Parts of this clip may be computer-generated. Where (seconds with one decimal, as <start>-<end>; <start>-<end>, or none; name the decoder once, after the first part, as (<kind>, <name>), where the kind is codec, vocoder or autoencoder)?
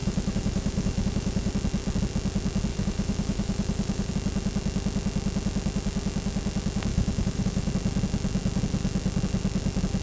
0.0-1.5 (autoencoder, DAC-VAE); 2.7-4.1; 6.9-7.7